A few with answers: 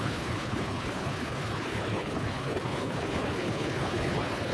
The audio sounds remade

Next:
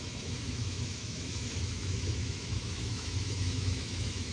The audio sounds remade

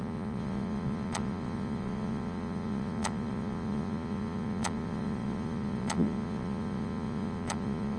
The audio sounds remade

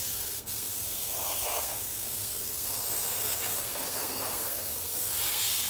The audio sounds remade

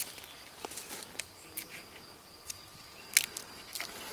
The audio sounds recorded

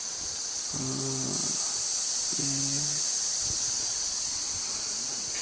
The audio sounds recorded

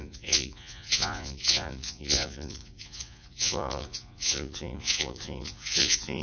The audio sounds remade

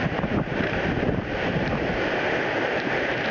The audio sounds remade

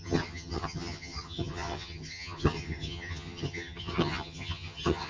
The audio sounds remade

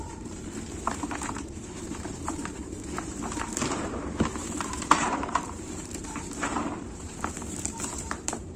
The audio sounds remade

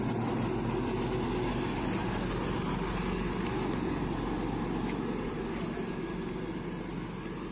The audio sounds recorded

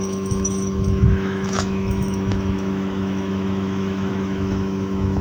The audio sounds remade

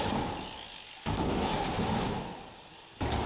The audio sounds recorded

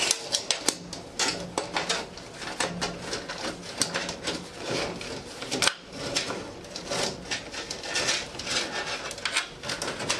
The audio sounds recorded